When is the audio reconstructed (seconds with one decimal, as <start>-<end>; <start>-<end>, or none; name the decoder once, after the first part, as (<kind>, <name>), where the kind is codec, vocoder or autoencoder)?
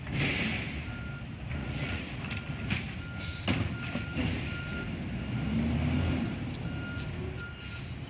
1.6-2.2 (vocoder, Vocos)